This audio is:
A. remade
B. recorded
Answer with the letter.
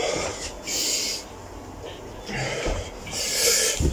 B